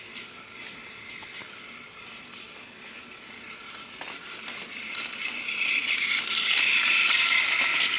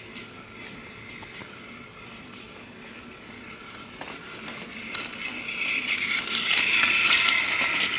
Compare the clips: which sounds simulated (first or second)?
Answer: first